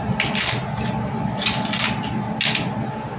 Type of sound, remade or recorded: recorded